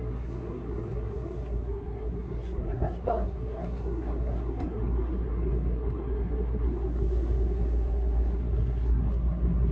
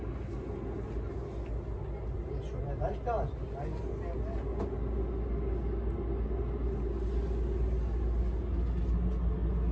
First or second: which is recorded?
second